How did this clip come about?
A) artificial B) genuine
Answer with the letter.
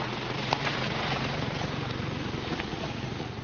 A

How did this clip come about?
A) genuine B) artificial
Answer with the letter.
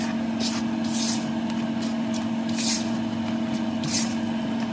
A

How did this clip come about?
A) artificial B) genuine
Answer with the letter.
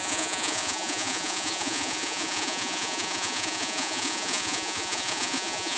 A